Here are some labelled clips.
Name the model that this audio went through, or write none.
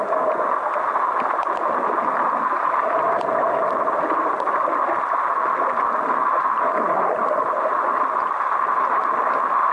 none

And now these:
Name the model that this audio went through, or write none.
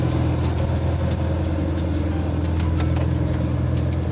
none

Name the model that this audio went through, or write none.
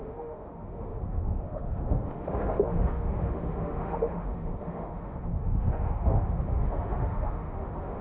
autoencoder, DAC-VAE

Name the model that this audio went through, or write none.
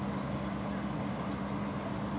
none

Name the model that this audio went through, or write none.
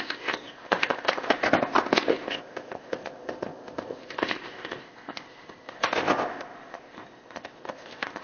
codec, ZipCodec